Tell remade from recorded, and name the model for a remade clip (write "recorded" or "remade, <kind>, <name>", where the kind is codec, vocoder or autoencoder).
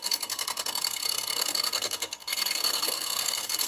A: remade, codec, SNAC